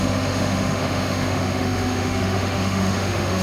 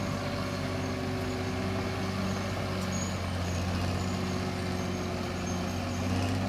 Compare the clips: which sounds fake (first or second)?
first